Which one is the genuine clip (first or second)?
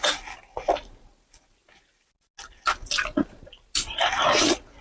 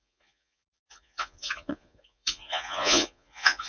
first